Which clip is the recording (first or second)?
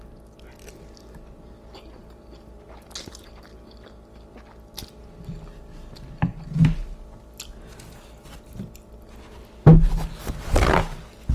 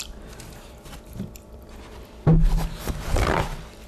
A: first